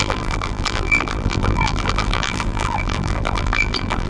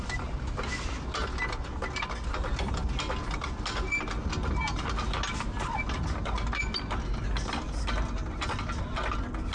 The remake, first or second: first